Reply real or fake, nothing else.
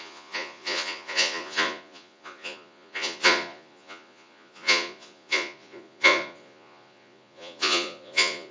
fake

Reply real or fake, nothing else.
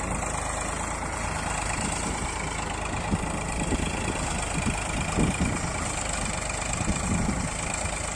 real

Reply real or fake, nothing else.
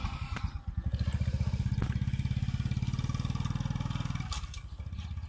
real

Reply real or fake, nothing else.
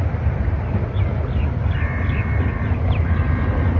real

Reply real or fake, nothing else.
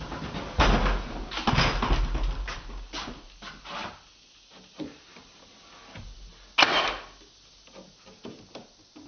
real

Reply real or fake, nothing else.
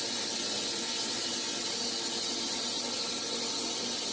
real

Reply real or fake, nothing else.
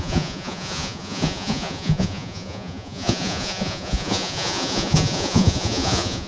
fake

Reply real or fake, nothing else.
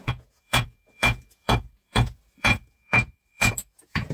fake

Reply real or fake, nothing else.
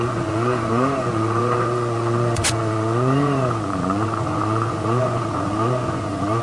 fake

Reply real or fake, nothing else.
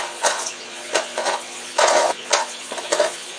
fake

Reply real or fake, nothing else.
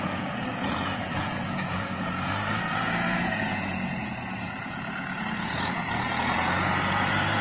fake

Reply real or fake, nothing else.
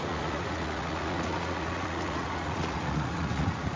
fake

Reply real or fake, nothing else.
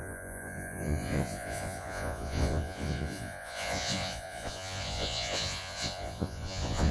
fake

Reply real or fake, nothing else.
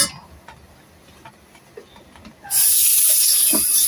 real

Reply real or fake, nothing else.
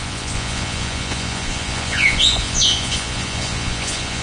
fake